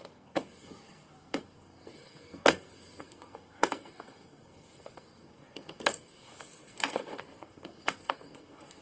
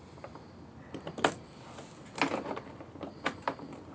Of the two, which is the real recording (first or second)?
second